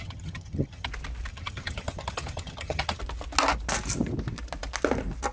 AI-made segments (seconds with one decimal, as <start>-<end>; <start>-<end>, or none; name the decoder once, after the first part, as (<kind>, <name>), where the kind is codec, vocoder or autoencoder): 0.0-0.9 (vocoder, HiFi-GAN); 1.3-3.0